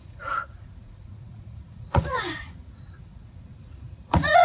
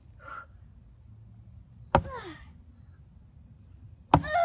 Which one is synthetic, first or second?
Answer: first